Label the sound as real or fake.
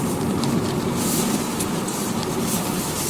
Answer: real